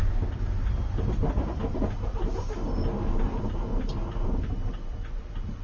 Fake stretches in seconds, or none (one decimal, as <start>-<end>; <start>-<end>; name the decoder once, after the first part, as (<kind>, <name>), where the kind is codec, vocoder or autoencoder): 0.0-5.6 (vocoder, BigVGAN v2)